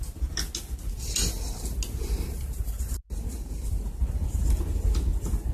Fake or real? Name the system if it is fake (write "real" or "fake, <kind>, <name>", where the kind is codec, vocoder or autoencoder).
real